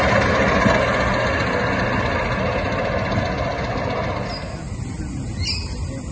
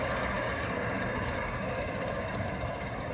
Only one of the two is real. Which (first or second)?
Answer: first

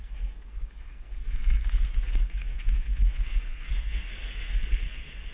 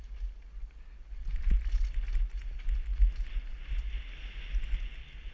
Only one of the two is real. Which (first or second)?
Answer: second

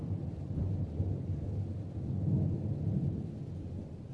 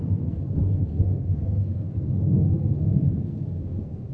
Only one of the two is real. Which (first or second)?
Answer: first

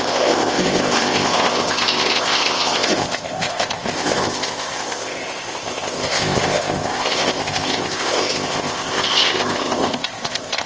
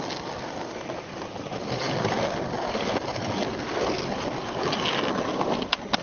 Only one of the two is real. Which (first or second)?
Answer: second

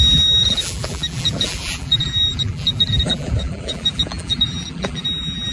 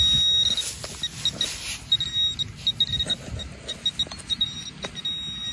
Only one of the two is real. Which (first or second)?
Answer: second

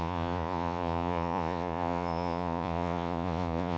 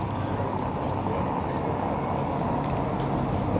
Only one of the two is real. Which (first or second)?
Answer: second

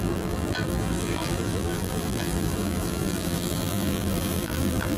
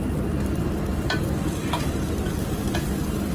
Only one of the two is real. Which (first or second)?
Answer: second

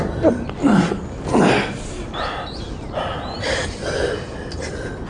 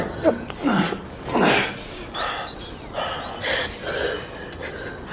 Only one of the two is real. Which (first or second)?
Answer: second